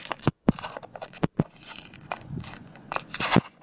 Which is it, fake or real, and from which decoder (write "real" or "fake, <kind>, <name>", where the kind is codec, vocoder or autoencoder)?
fake, vocoder, Vocos